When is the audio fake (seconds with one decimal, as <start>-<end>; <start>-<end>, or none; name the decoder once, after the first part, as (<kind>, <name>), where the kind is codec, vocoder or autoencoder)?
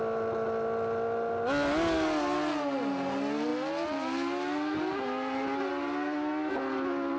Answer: none